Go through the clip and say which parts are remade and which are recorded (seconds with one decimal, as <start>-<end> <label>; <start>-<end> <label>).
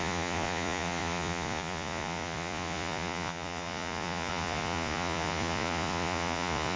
0.0-6.8 remade